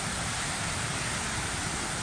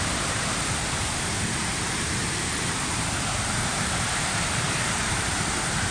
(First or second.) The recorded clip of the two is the first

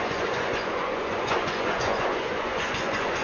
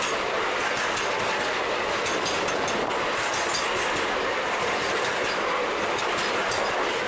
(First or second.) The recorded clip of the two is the second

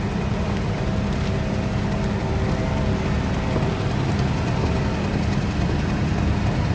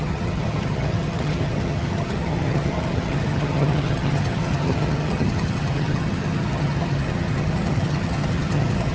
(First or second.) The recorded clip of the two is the first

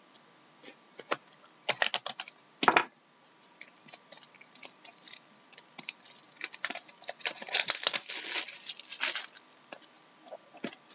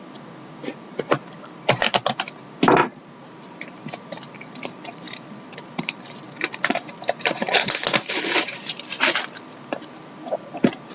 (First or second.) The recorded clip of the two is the first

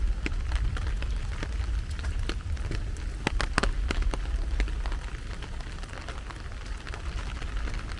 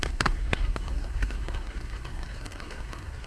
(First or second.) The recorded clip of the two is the first